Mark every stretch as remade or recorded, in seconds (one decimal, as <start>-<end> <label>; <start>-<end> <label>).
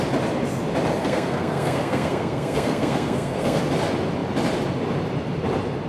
0.0-1.0 recorded; 1.0-3.6 remade; 3.6-5.9 recorded